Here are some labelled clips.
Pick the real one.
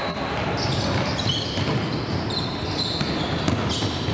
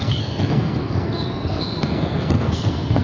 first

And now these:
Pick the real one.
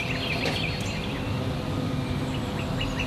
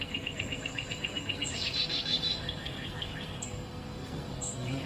first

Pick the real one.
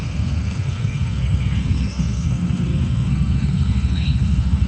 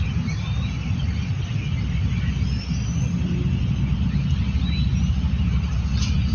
second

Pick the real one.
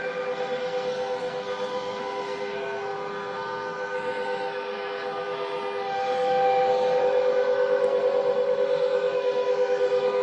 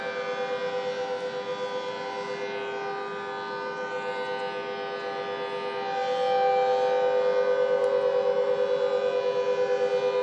second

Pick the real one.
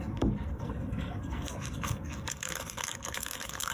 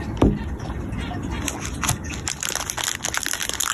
second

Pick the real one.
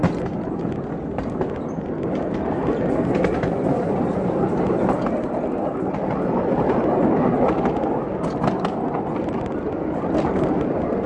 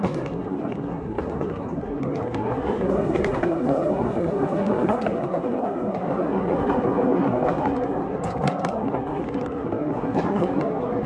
first